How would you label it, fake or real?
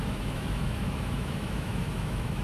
fake